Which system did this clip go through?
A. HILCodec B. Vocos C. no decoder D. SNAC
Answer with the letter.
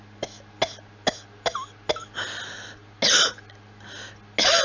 C